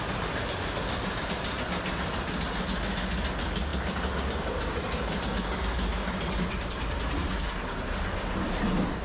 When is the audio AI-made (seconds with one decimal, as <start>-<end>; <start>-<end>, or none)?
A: none